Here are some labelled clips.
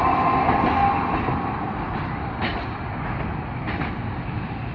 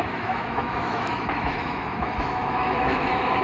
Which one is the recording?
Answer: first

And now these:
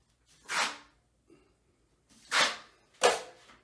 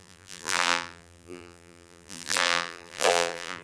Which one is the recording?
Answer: first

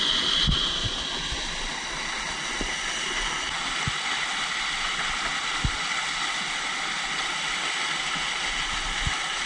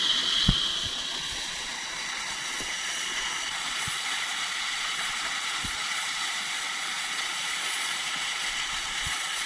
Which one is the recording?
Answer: first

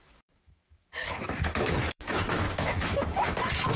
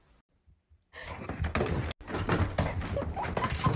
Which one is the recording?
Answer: second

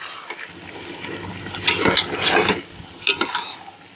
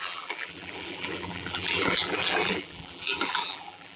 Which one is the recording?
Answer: first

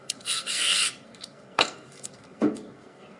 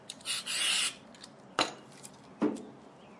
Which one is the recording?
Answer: second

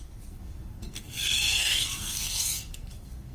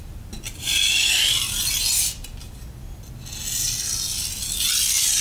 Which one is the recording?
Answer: second